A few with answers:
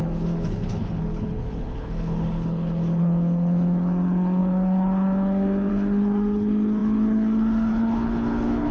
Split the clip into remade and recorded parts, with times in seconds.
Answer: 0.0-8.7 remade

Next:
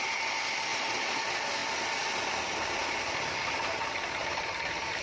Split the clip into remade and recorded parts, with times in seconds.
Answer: 0.0-0.7 recorded; 0.7-1.2 remade; 1.2-4.2 recorded; 4.2-5.0 remade

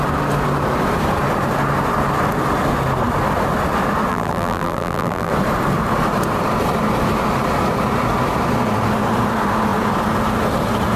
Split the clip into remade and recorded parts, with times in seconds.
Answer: 0.0-4.1 recorded; 4.1-5.3 remade; 5.3-11.0 recorded

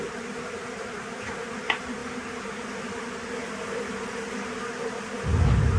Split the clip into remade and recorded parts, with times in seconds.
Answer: 0.0-5.8 recorded

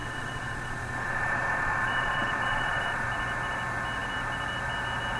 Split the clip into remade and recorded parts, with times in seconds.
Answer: 0.0-3.1 remade; 3.1-5.2 recorded

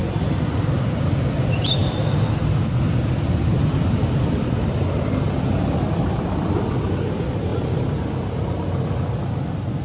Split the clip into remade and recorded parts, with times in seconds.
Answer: 0.0-9.8 recorded